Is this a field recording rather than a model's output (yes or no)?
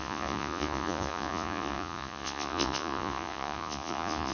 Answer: no